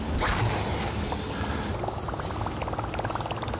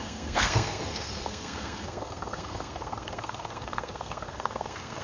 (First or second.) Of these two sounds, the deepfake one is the second